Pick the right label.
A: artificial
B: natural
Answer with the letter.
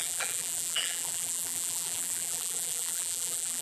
A